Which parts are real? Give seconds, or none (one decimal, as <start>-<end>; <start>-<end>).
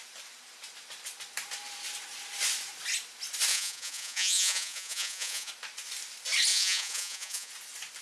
0.0-3.5; 5.5-6.5; 7.5-8.0